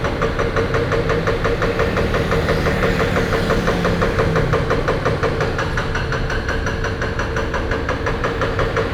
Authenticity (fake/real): real